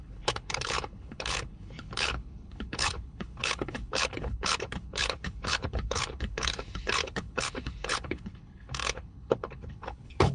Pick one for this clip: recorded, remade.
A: remade